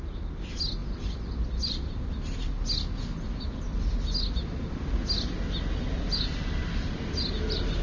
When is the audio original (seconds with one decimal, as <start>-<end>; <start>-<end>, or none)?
0.0-7.8